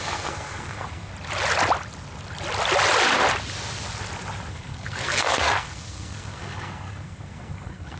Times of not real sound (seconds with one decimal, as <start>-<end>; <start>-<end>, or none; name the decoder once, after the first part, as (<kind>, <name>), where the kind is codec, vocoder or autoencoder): 0.0-1.1 (codec, SNAC); 4.5-8.0